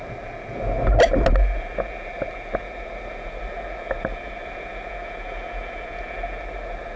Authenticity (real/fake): real